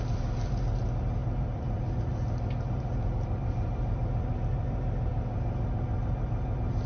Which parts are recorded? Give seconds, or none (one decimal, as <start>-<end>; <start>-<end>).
5.1-6.0